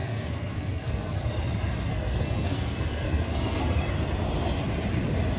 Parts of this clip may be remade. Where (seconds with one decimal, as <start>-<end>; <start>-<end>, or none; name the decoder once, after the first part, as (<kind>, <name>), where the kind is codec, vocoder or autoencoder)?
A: 0.0-1.3 (codec, SNAC); 1.9-3.9